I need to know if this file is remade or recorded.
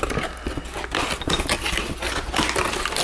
recorded